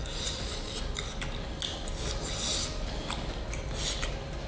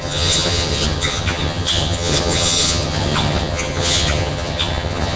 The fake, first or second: second